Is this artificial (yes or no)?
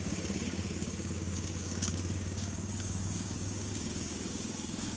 yes